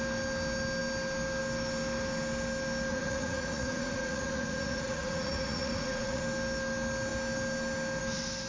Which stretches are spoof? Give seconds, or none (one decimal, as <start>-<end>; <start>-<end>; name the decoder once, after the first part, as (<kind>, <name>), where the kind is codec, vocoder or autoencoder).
2.9-6.2 (vocoder, Vocos)